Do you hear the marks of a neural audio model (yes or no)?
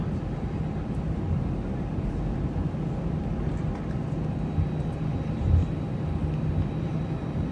no